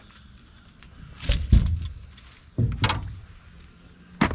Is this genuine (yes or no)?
yes